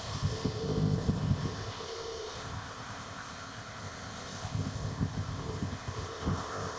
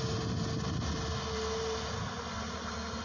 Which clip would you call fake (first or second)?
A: first